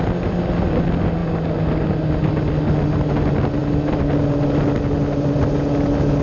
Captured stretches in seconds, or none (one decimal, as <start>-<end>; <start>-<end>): 0.0-6.2